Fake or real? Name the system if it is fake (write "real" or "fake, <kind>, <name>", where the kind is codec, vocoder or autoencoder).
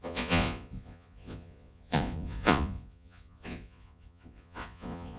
fake, vocoder, Vocos